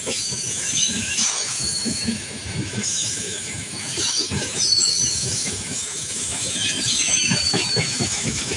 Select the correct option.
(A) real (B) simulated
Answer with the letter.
B